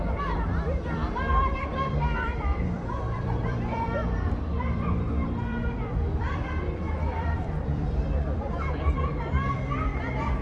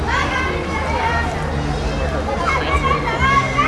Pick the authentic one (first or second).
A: second